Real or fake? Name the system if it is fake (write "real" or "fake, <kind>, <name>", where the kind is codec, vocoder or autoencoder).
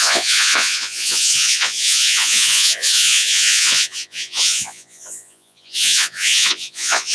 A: fake, vocoder, Vocos